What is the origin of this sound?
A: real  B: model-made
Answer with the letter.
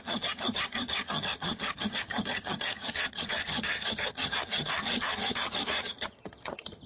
B